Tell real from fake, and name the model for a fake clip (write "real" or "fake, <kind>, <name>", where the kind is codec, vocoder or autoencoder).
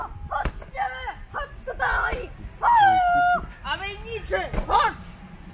real